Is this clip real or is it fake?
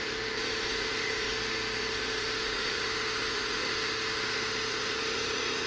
fake